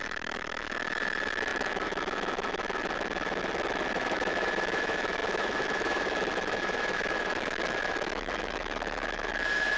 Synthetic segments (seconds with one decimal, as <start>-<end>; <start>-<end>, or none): 0.0-9.8